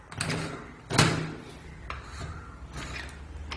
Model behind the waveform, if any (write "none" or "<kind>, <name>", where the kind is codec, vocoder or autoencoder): none